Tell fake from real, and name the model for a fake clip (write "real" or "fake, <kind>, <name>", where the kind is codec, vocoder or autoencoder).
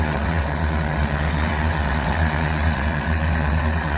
fake, vocoder, WaveNeXt